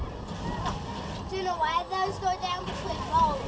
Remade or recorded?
recorded